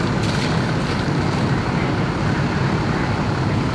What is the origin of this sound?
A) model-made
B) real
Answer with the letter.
B